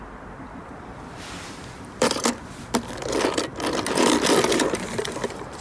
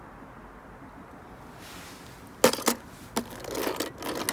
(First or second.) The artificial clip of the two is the first